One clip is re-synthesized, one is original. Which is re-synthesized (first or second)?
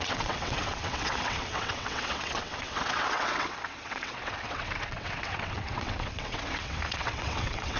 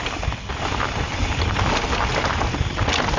first